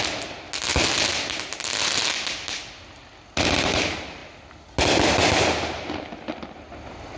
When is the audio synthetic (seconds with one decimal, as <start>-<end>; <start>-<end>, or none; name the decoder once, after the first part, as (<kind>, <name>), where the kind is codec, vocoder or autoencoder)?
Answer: none